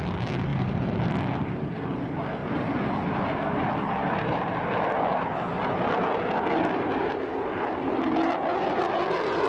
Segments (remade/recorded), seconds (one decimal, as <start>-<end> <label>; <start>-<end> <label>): 0.0-9.5 recorded